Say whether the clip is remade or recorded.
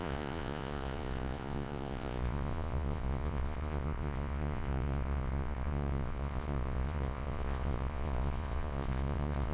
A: remade